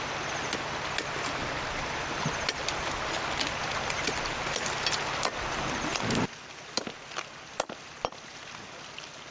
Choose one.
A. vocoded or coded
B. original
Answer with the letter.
B